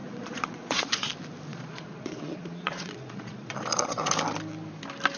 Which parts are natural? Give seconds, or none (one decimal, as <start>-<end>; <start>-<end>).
1.1-1.5; 4.1-5.2